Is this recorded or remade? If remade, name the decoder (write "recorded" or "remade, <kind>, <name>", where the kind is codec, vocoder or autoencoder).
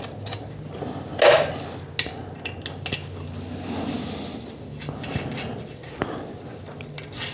recorded